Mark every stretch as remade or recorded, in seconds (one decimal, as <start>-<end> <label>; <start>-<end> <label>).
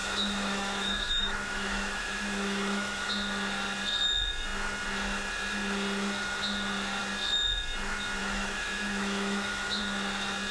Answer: 0.0-3.1 remade; 3.1-8.2 recorded; 8.2-9.8 remade; 9.8-10.5 recorded